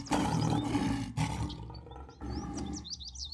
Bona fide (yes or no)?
yes